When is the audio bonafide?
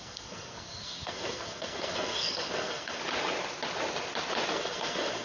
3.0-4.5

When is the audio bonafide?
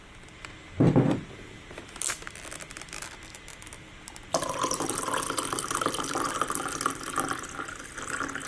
0.0-8.5